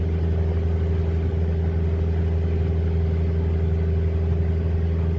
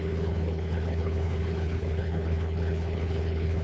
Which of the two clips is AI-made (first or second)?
second